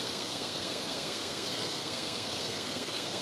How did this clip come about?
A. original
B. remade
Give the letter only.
B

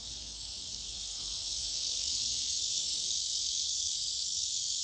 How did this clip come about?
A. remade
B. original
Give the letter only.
A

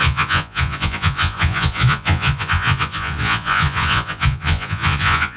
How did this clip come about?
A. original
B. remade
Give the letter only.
B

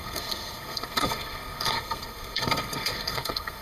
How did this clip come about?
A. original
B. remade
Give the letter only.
B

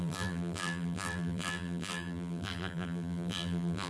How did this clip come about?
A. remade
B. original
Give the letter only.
A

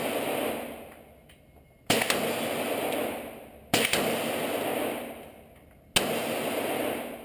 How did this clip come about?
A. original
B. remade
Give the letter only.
A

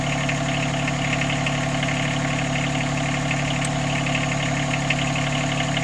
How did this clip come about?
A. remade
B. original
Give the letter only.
B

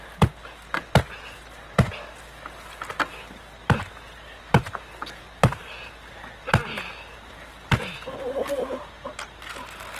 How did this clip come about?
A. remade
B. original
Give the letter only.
B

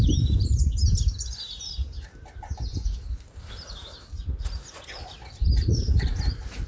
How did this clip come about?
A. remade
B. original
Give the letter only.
A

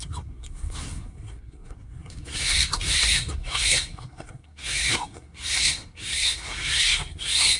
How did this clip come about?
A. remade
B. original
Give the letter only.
A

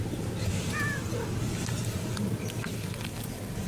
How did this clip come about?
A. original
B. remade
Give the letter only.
A